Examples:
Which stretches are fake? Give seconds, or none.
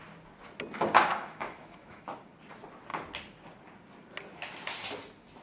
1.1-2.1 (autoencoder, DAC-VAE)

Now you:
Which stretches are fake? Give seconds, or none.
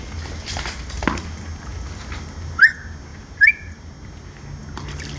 1.7-2.6 (vocoder, BigVGAN v2); 3.1-4.1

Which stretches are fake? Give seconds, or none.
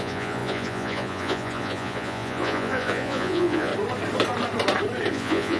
0.0-3.7 (vocoder, Vocos); 5.1-5.6